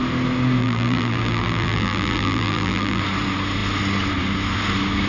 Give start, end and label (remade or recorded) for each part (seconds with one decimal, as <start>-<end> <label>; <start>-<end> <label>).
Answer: 0.0-0.6 recorded; 0.6-3.0 remade; 3.0-5.1 recorded